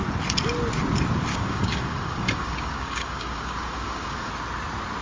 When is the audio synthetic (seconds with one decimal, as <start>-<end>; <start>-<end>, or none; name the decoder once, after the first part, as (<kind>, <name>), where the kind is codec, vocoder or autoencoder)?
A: 1.3-4.3 (codec, DAC)